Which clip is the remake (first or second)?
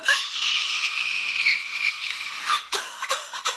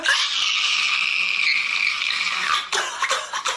first